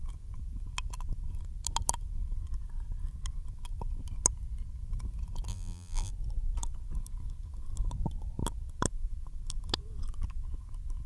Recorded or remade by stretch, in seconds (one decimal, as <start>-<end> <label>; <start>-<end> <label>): 0.0-5.5 recorded; 5.5-6.1 remade; 6.1-11.1 recorded